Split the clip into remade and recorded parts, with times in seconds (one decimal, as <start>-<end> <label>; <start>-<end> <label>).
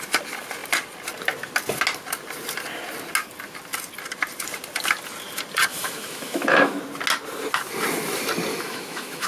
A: 0.0-5.7 recorded; 5.7-6.8 remade; 6.8-8.5 recorded; 8.5-9.3 remade